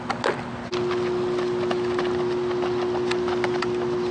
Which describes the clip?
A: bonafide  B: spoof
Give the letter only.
A